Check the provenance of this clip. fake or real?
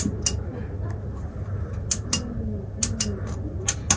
real